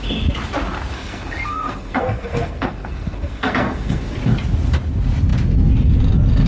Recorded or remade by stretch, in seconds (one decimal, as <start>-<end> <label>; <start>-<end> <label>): 0.0-0.9 recorded; 0.9-4.2 remade; 4.2-6.5 recorded